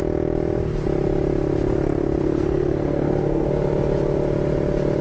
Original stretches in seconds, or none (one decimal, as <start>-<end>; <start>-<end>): 0.0-2.2; 3.5-5.0